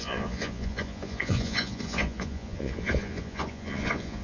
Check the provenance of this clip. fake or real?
fake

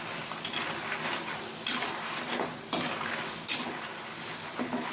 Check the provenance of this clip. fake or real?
real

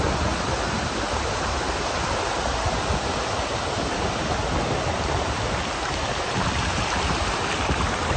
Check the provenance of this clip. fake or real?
real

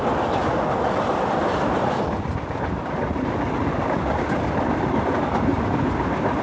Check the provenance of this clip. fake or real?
real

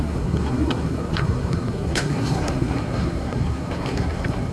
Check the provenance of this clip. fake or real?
fake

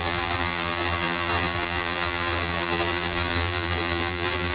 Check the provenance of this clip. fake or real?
fake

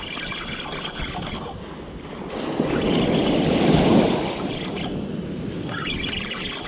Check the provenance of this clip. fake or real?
real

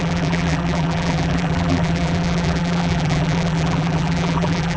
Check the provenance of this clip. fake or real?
fake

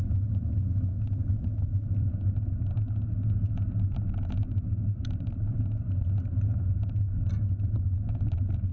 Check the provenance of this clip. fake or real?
real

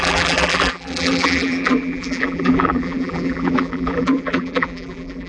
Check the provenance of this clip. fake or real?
fake